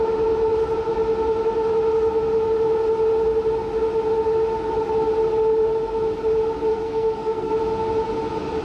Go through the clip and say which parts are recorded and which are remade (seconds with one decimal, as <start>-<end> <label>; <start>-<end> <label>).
0.0-6.7 recorded; 6.7-7.5 remade; 7.5-8.6 recorded